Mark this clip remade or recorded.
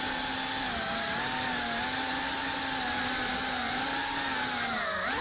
recorded